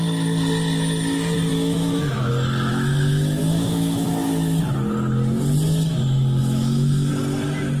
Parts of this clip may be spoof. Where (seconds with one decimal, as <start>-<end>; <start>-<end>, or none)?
1.5-2.3; 2.7-4.6; 6.4-7.1

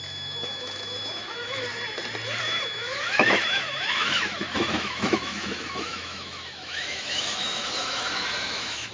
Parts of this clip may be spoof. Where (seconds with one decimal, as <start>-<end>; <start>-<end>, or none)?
0.0-1.7; 2.4-8.9

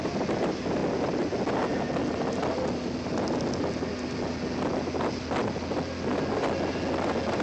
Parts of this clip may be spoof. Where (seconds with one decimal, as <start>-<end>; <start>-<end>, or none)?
none

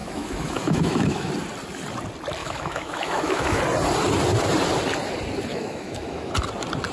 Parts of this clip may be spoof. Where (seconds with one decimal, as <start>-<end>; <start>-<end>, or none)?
0.0-1.3; 2.4-3.6; 5.5-6.3

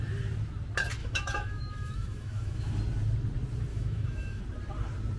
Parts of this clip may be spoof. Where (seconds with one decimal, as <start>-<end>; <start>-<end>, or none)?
1.0-2.7; 3.7-4.4

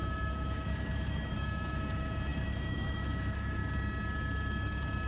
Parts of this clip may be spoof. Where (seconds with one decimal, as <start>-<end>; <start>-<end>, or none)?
0.0-3.6

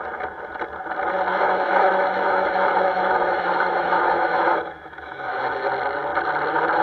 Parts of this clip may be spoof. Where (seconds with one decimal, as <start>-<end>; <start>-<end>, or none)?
1.3-5.4

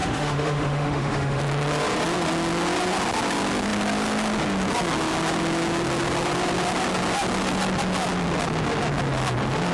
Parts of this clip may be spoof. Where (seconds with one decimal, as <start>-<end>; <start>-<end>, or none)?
0.0-1.4